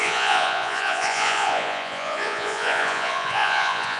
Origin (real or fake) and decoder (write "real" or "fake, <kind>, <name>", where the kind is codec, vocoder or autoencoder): fake, vocoder, Vocos